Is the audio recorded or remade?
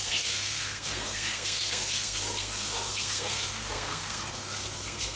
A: remade